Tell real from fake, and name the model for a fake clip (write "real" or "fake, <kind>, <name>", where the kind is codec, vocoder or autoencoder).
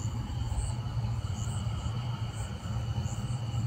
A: real